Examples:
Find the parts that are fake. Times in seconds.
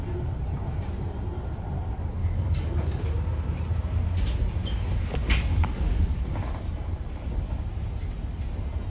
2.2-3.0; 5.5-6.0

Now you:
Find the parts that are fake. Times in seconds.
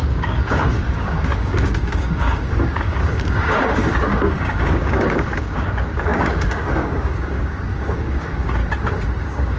0.0-8.6; 9.2-9.6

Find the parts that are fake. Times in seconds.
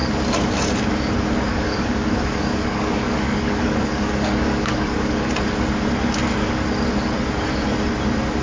1.5-5.3